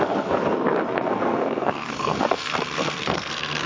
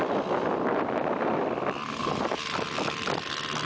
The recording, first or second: second